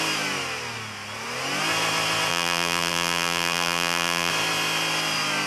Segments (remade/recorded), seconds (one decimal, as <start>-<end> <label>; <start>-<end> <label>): 0.0-2.3 recorded; 2.3-4.3 remade; 4.3-5.5 recorded